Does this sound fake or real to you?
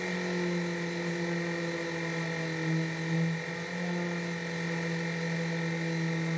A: real